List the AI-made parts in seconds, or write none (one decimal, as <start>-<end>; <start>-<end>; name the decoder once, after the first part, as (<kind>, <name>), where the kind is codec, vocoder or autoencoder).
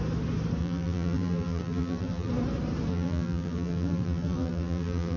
0.6-2.3 (vocoder, BigVGAN v2); 2.9-5.2